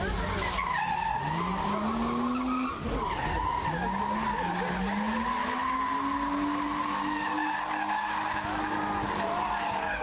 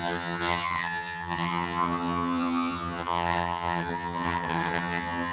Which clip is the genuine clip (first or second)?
first